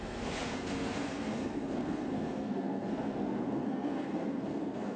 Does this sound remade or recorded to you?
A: remade